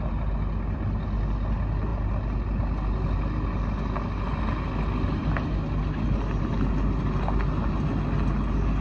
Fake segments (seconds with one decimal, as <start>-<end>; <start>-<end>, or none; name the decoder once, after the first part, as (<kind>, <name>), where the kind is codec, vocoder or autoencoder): none